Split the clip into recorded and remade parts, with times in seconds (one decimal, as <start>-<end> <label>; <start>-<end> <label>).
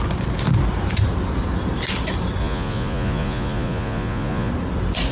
0.0-2.4 recorded; 2.4-4.5 remade; 4.5-5.1 recorded